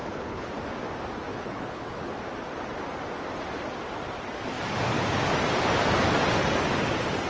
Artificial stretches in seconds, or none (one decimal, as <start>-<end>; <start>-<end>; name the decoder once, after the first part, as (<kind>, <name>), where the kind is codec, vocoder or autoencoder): 0.0-0.5 (codec, HILCodec); 1.3-2.1